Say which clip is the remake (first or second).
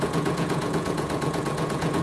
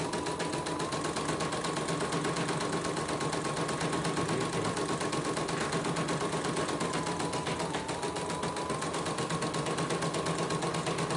first